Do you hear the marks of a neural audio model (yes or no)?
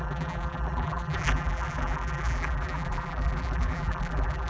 yes